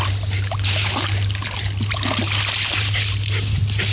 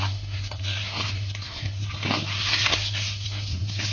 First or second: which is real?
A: first